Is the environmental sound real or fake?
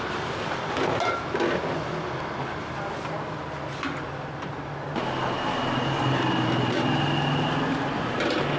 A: real